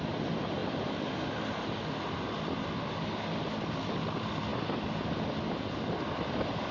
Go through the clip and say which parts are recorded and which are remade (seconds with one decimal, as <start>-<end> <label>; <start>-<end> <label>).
0.0-6.7 recorded

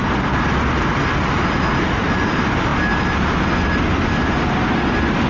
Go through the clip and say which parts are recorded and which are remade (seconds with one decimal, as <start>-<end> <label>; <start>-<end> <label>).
0.0-5.3 recorded

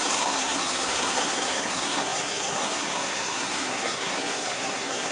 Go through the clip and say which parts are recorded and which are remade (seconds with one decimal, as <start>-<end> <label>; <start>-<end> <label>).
0.0-5.1 remade

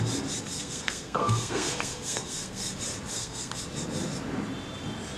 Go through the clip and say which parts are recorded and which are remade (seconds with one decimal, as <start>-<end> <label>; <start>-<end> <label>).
0.0-0.5 recorded; 0.5-2.7 remade; 2.7-3.1 recorded; 3.1-3.6 remade; 3.6-5.2 recorded

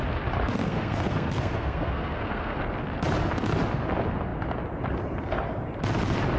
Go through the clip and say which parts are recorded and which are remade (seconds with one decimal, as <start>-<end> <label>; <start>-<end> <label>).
0.0-0.6 recorded; 0.6-2.6 remade; 2.6-6.4 recorded

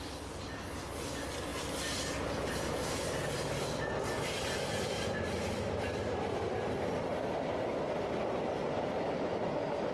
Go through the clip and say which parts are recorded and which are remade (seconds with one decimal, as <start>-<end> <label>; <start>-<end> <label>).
0.0-9.9 recorded